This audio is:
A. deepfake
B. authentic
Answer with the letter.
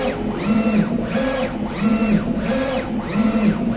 B